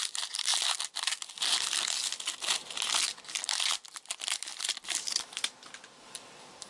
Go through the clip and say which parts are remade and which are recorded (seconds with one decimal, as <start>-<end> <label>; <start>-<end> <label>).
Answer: 0.0-6.7 recorded